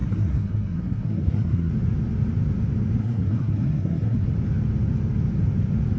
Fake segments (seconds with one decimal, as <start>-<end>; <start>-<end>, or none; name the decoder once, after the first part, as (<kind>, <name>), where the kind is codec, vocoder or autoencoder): 0.0-1.7 (codec, SNAC); 3.0-4.3